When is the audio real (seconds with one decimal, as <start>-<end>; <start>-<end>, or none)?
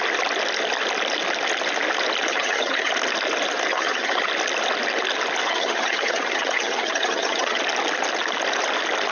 0.0-2.3; 2.9-3.7; 4.3-5.4; 7.6-9.1